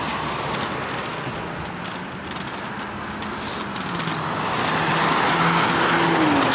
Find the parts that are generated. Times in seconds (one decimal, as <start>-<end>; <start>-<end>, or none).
none